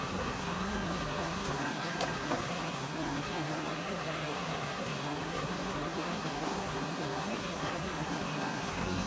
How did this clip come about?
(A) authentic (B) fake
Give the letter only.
B